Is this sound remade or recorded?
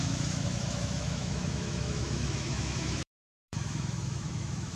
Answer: remade